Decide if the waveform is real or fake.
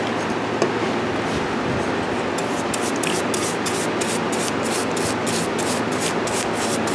real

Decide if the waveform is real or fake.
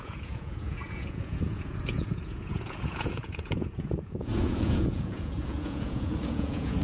fake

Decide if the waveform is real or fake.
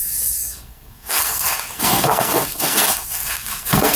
fake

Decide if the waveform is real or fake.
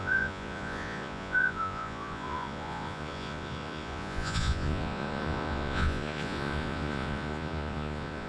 fake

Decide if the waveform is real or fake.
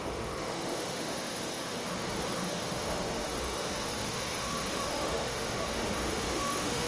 fake